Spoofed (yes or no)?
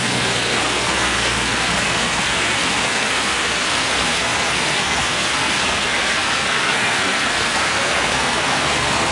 yes